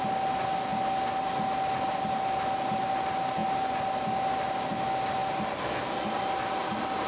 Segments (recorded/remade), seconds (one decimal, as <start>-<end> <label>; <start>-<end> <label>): 0.0-7.1 recorded